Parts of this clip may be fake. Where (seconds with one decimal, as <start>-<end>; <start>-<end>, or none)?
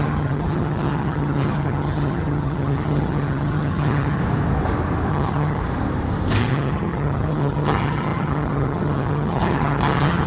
0.0-4.2; 5.1-5.6; 6.4-10.3